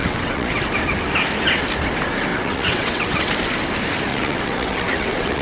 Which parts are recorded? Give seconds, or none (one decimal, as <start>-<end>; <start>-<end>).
0.6-2.3; 3.3-4.1